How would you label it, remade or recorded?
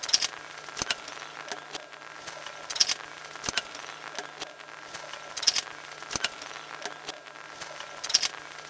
recorded